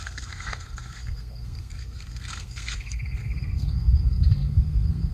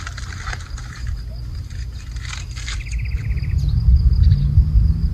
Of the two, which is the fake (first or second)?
first